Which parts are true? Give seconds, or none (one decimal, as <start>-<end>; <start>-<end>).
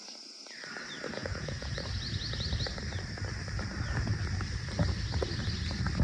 0.0-1.2; 1.7-6.0